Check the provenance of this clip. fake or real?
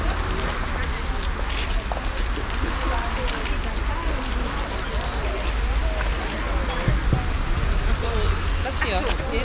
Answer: real